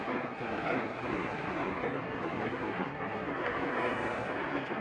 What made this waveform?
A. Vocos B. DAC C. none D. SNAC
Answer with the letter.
D